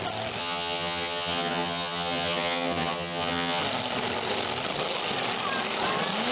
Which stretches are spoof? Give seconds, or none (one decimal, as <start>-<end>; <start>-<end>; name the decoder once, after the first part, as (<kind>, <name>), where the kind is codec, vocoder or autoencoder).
0.4-3.6 (vocoder, HiFi-GAN)